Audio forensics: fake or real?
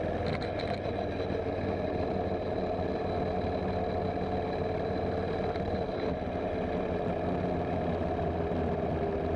real